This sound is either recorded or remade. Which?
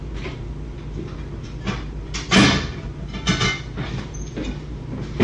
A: recorded